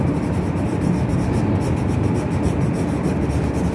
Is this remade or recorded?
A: recorded